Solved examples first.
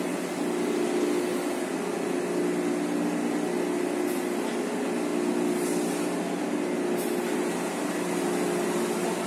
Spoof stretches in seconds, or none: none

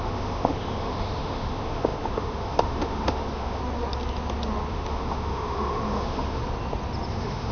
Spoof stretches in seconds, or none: 0.0-3.6 (autoencoder, DAC-VAE); 4.7-6.4; 7.1-7.5

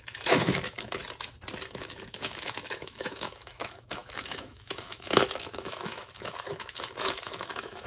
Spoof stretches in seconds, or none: 0.0-1.0 (autoencoder, DAC-VAE); 1.7-7.9

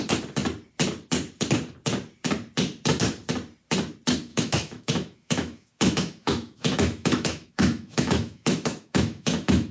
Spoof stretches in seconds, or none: 4.3-9.7 (autoencoder, DAC-VAE)

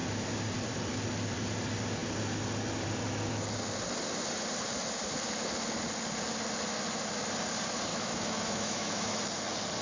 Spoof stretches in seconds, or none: 7.9-9.2 (autoencoder, DAC-VAE)

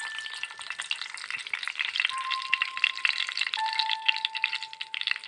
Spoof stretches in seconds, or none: none

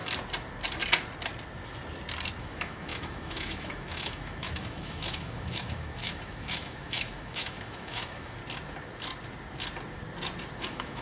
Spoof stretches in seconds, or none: 2.4-8.4 (autoencoder, DAC-VAE); 10.6-11.0